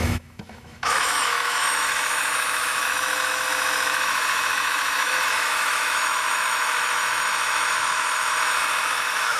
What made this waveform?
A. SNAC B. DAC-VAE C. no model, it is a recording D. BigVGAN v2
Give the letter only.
B